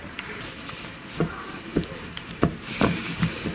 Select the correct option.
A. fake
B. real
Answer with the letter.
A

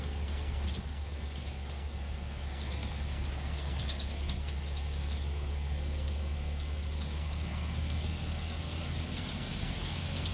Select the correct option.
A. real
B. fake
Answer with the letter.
B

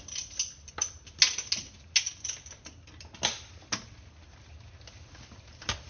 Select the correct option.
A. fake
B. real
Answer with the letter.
B